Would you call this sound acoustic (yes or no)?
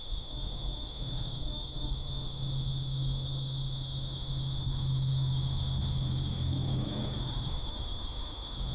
no